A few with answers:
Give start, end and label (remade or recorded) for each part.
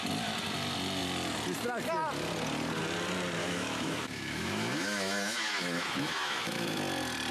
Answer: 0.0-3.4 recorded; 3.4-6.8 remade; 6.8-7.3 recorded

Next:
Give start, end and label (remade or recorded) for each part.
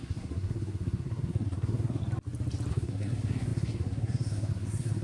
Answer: 0.0-2.0 remade; 2.0-2.7 recorded; 2.7-5.0 remade